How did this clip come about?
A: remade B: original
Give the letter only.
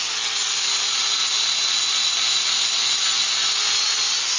B